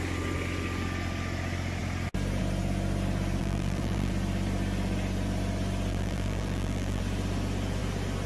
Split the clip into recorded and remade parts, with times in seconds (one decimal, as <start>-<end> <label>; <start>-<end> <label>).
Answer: 0.0-3.4 recorded; 3.4-4.1 remade; 4.1-5.9 recorded; 5.9-7.0 remade; 7.0-8.3 recorded